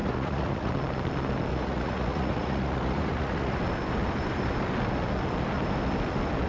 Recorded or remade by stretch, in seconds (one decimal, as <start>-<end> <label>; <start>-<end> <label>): 0.0-0.7 remade; 0.7-1.5 recorded; 1.5-3.6 remade; 3.6-6.5 recorded